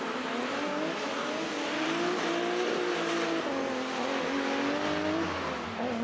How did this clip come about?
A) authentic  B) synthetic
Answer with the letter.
A